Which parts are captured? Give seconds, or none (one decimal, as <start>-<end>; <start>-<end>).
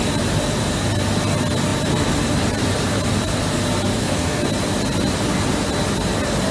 0.0-3.9; 4.4-6.5